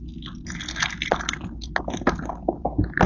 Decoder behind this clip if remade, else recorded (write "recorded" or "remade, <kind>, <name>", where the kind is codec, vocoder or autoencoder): recorded